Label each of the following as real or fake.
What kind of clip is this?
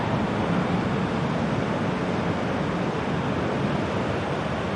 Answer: real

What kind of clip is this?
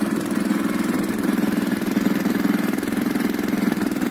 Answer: fake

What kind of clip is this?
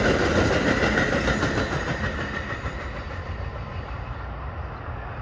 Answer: real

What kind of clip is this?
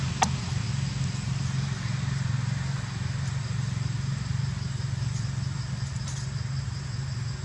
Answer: real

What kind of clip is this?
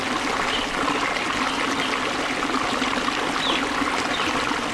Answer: real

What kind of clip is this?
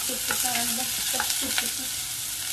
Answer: real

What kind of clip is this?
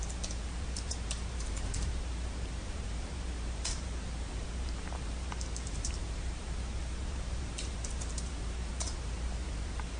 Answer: fake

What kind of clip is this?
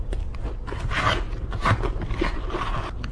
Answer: real